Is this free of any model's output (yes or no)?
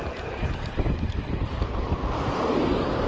yes